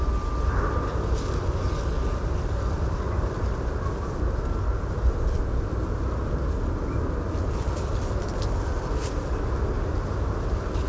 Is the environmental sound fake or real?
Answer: real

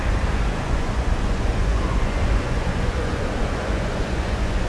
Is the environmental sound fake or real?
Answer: fake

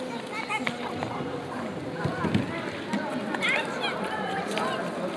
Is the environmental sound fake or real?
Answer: real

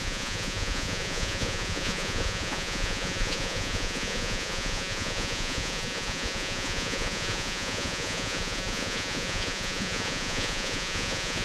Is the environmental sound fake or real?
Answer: fake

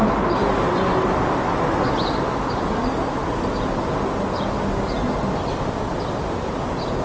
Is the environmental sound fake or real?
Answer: real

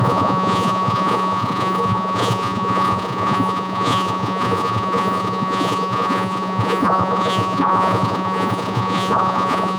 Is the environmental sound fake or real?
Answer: fake